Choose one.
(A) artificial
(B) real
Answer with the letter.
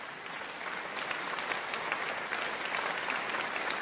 B